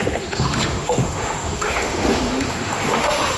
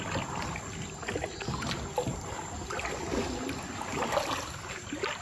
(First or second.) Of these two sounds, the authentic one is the second